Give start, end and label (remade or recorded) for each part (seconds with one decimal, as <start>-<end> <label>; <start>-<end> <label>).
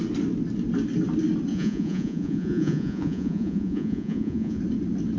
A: 0.0-1.5 recorded; 1.5-4.6 remade; 4.6-5.2 recorded